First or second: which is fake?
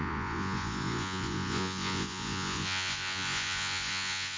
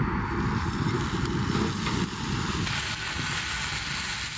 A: first